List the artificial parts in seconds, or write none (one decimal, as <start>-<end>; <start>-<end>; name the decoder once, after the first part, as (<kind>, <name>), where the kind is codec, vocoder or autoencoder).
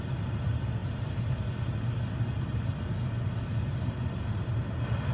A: none